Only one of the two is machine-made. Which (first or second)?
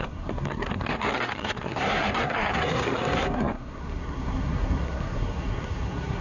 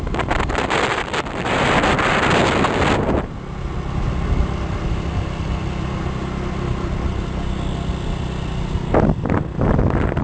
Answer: first